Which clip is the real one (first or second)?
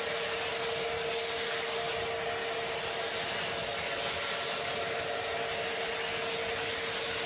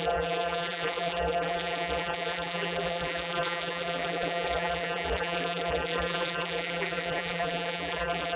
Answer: first